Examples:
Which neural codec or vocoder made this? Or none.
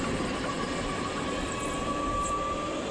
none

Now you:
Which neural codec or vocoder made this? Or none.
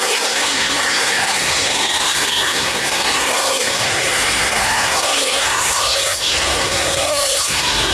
codec, SNAC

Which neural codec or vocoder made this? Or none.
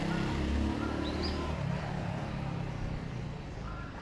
none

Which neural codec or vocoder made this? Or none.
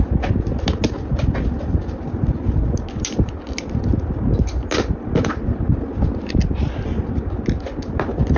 none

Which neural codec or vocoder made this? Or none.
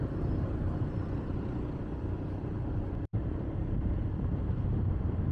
none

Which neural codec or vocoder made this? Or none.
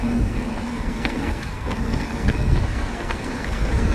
codec, SNAC